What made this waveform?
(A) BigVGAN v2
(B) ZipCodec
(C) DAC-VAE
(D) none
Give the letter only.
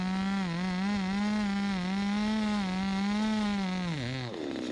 D